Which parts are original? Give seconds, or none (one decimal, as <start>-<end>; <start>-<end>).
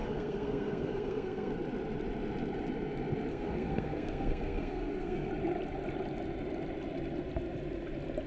1.5-3.3; 5.3-8.3